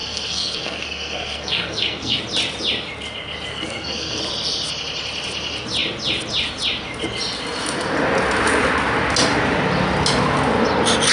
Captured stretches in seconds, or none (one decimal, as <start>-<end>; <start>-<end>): 2.2-3.5; 4.2-11.1

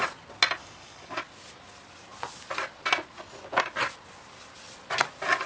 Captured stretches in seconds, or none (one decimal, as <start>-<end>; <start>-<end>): 0.0-0.6; 1.2-5.5

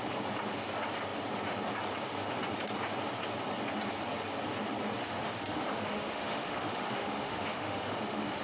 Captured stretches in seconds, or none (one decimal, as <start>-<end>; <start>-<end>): 0.0-5.0

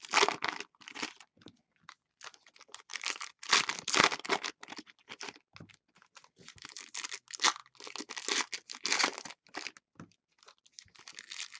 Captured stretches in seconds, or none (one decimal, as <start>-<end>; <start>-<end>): 0.0-11.6